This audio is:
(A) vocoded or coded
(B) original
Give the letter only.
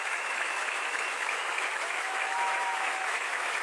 A